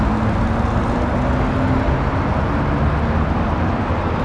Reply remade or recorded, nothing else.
recorded